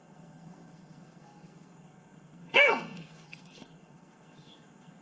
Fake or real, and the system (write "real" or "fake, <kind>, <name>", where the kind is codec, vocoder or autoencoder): fake, codec, SNAC